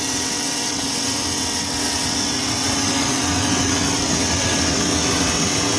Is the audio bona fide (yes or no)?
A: no